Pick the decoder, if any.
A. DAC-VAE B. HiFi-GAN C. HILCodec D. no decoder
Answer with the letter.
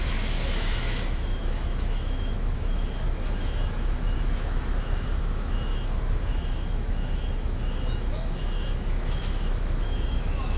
A